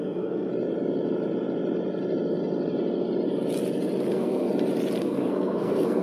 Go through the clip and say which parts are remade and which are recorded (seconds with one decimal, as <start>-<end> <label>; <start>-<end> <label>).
0.0-0.5 remade; 0.5-4.1 recorded; 4.1-4.5 remade; 4.5-5.0 recorded; 5.0-6.0 remade